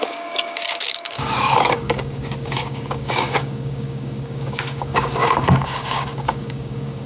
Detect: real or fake fake